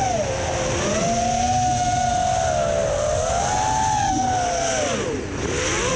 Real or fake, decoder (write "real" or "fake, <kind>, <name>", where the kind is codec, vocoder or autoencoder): real